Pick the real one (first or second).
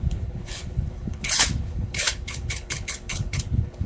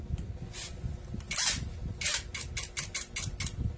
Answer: second